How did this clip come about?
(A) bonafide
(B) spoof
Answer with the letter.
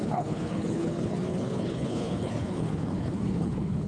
B